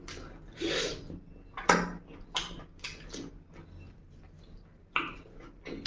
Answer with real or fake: real